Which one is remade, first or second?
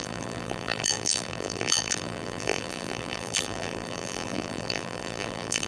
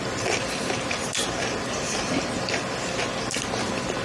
first